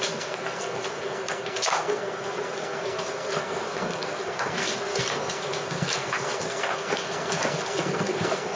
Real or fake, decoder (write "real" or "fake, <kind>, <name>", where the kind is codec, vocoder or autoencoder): fake, codec, SNAC